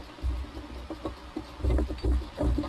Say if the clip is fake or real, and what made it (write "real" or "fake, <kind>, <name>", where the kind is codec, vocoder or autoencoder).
real